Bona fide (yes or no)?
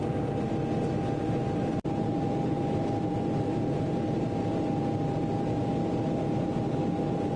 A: yes